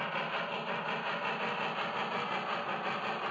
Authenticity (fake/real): real